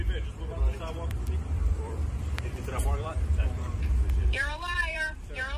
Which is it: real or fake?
fake